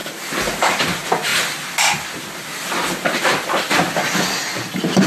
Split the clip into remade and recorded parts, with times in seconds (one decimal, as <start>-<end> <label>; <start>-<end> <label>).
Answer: 0.0-5.1 recorded